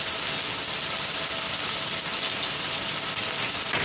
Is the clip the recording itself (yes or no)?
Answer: yes